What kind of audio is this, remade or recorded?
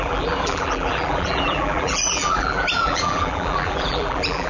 remade